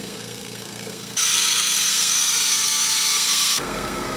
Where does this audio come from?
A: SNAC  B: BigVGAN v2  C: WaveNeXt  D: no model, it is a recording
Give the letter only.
A